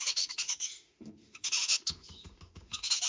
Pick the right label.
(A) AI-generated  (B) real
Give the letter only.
A